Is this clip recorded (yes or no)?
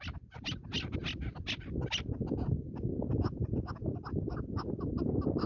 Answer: yes